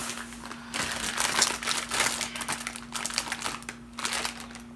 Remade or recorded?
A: recorded